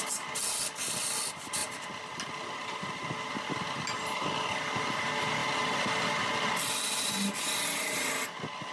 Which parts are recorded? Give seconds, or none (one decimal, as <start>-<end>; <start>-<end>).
0.0-1.6; 2.3-5.4; 6.5-8.7